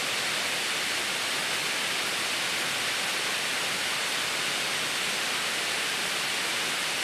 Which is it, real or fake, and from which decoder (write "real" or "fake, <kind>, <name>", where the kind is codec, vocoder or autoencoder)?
real